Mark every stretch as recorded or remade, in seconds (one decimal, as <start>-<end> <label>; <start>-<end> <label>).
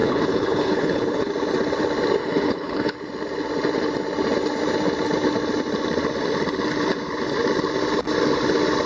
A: 0.0-1.3 remade; 1.3-2.2 recorded; 2.2-2.9 remade; 2.9-8.9 recorded